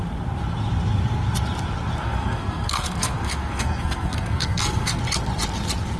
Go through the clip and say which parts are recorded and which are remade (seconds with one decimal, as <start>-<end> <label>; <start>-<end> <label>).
0.0-2.0 recorded; 2.0-5.0 remade; 5.0-6.0 recorded